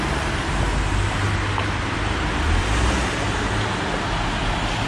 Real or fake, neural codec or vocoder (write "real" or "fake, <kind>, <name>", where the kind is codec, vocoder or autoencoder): real